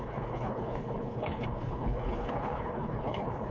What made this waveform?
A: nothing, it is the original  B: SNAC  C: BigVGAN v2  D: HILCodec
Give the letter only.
D